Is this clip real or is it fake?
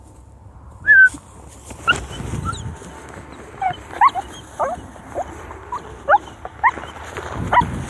real